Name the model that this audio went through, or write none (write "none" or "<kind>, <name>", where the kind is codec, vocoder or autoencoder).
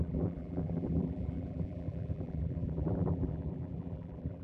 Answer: vocoder, BigVGAN v2